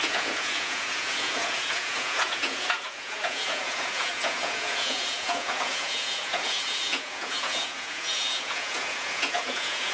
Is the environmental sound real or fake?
fake